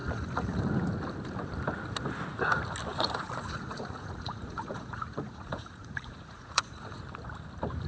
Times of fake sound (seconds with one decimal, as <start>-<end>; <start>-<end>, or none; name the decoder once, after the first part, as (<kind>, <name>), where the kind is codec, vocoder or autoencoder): 0.0-0.6 (vocoder, Vocos); 2.9-7.0